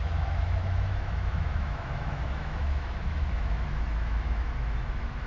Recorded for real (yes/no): no